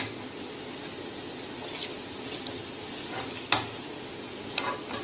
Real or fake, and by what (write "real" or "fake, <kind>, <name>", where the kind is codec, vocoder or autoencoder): real